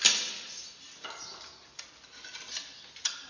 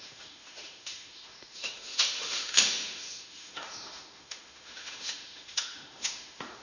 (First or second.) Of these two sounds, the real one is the first